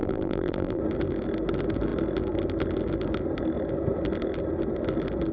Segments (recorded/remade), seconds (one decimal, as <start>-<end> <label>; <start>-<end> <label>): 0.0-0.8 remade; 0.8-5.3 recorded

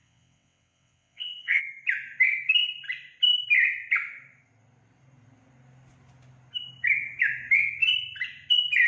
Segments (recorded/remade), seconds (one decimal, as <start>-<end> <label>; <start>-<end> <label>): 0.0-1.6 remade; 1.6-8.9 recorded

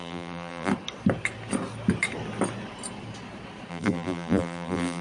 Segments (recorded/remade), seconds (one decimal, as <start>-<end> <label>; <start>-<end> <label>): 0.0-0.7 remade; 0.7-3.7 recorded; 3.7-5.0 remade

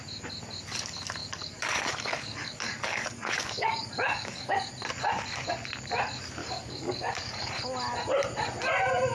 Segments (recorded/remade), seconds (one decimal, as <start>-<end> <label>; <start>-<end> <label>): 0.0-1.2 recorded; 1.2-4.7 remade; 4.7-6.4 recorded; 6.4-7.5 remade; 7.5-9.1 recorded

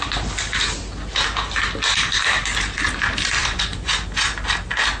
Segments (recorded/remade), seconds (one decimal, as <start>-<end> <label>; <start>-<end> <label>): 0.0-3.4 recorded; 3.4-3.9 remade; 3.9-5.0 recorded